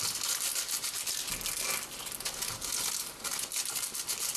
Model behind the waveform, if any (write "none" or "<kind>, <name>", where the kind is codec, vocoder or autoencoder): none